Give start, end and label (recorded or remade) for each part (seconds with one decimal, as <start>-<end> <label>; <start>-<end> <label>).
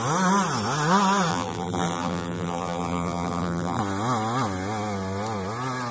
0.0-1.3 recorded; 1.3-3.8 remade; 3.8-5.9 recorded